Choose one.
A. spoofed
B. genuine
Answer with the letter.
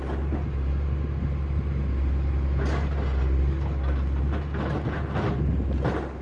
B